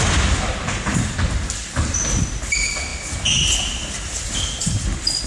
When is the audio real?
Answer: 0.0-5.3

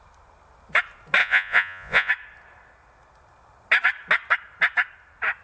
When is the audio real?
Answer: 0.0-1.2; 2.1-5.4

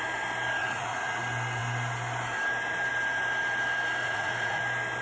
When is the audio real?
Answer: 0.0-0.6; 1.2-4.0; 4.6-5.0